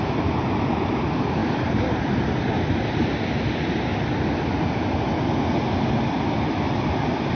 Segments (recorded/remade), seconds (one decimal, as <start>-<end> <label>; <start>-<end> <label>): 0.0-7.3 recorded